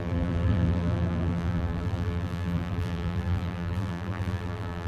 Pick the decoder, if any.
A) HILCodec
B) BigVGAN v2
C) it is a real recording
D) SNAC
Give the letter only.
B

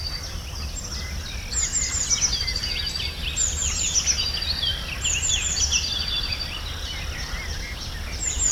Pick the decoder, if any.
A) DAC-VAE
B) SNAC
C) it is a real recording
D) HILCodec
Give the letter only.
C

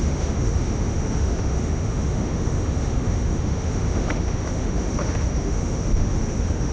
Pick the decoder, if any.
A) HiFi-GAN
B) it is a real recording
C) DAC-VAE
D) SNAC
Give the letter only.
C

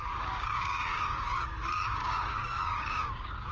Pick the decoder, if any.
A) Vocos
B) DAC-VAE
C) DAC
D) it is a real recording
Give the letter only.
C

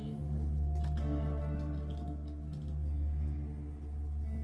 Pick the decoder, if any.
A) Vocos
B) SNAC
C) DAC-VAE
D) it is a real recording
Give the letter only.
D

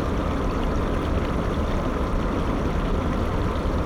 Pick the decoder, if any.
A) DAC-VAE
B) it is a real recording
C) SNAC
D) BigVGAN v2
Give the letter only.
B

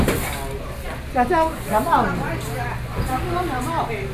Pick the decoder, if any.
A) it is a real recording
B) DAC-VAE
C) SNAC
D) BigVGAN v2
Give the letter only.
A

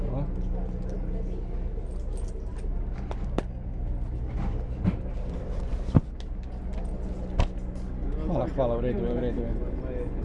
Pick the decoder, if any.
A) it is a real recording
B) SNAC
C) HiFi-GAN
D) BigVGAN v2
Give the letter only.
A